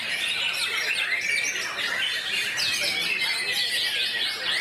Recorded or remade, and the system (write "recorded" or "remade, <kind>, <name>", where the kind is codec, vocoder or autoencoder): recorded